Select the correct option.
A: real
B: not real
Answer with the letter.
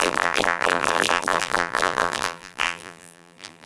B